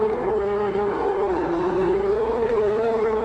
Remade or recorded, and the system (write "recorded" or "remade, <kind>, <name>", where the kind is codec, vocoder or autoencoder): remade, codec, SNAC